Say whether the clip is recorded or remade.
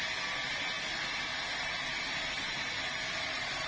recorded